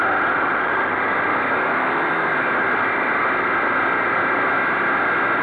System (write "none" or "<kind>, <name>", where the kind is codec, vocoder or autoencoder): none